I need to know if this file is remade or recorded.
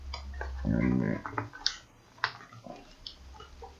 recorded